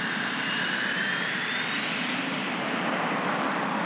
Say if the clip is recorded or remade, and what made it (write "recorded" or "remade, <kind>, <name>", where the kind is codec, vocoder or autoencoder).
remade, vocoder, BigVGAN v2